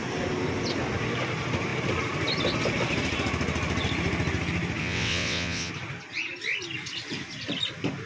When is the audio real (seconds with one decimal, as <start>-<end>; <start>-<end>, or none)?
0.0-4.8; 5.7-8.1